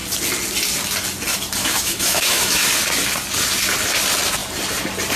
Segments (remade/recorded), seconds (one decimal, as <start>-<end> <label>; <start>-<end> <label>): 0.0-1.6 recorded; 1.6-2.7 remade; 2.7-5.2 recorded

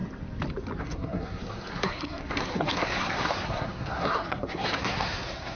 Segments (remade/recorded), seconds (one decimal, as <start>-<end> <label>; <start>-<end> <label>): 0.0-0.8 recorded; 0.8-5.6 remade